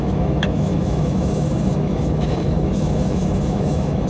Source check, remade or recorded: remade